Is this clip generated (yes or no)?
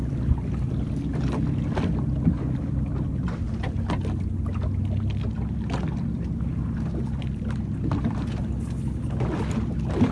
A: no